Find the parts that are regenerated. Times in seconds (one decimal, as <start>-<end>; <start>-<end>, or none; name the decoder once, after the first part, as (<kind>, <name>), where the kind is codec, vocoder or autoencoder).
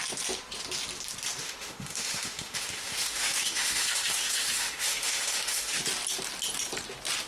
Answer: 1.4-5.8 (autoencoder, DAC-VAE)